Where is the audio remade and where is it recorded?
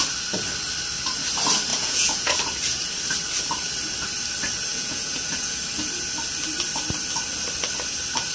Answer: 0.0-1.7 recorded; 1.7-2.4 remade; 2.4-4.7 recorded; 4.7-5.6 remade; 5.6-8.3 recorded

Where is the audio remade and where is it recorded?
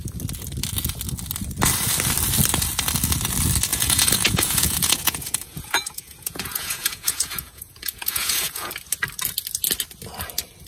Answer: 0.0-3.7 recorded; 3.7-8.7 remade; 8.7-10.7 recorded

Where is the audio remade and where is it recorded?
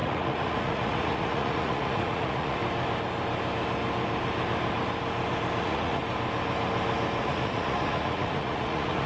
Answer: 0.0-2.6 remade; 2.6-5.6 recorded; 5.6-6.0 remade; 6.0-7.2 recorded; 7.2-9.1 remade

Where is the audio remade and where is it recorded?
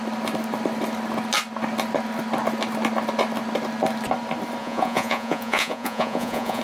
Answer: 0.0-4.6 recorded; 4.6-6.6 remade